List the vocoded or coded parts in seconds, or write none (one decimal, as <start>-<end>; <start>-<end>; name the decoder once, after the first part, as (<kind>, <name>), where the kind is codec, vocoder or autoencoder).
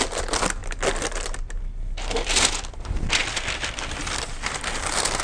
none